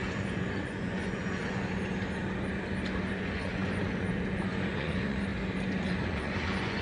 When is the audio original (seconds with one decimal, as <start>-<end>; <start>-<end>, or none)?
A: 1.6-3.1; 5.3-5.8